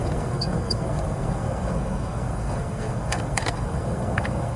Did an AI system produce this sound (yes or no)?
yes